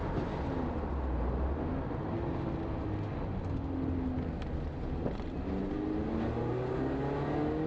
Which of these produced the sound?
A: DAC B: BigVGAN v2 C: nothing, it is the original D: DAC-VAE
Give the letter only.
C